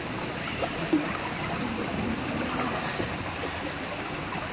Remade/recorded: recorded